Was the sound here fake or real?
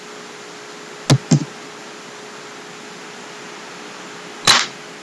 real